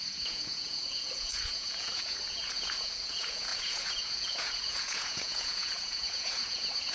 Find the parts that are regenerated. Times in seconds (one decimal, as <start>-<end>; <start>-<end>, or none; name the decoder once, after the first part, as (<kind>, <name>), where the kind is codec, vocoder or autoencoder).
0.0-6.9 (vocoder, Vocos)